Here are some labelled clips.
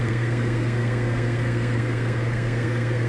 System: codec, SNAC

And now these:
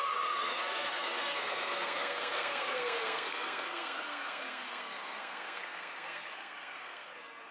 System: codec, SNAC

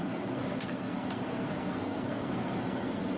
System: codec, SNAC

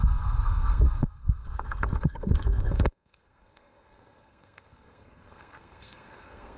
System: codec, SNAC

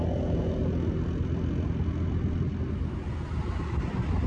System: none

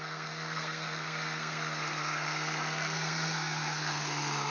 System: codec, SNAC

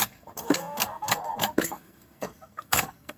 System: codec, SNAC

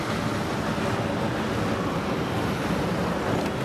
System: none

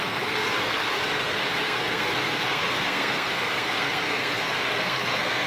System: codec, SNAC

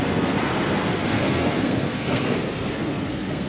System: codec, SNAC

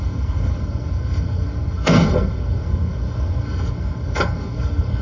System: codec, SNAC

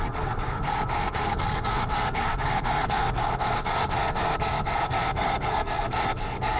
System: codec, SNAC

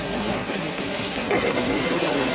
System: codec, SNAC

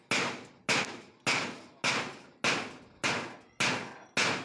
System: none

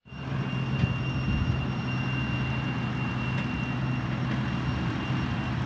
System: none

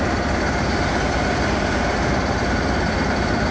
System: none